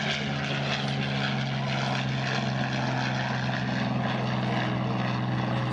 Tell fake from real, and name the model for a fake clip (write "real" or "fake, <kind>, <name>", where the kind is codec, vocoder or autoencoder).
real